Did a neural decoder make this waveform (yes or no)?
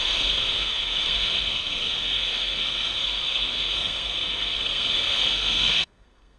yes